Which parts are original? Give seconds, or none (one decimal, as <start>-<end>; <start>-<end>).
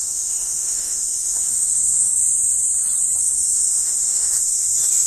2.2-3.2